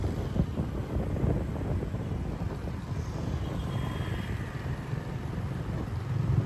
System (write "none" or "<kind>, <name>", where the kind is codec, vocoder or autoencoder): none